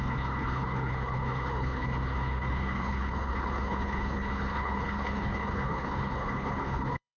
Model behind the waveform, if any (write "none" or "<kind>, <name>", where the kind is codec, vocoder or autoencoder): codec, HILCodec